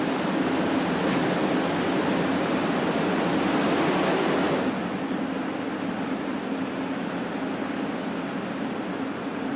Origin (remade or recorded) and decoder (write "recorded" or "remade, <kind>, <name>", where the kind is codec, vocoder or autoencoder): recorded